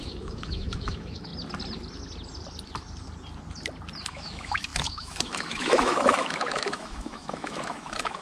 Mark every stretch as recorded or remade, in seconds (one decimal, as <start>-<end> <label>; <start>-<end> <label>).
0.0-1.3 remade; 1.3-4.1 recorded; 4.1-8.2 remade